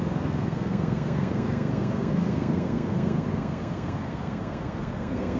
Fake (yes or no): yes